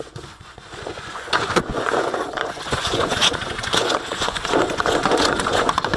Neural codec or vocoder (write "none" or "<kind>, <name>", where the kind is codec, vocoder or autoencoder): vocoder, Vocos